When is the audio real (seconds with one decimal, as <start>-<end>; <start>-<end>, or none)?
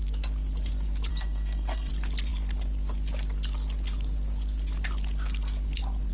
0.0-1.1; 1.9-6.1